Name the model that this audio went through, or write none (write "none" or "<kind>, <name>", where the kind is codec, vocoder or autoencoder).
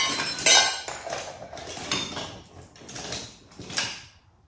none